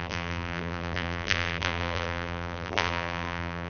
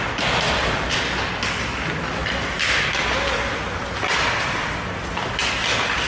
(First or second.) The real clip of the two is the second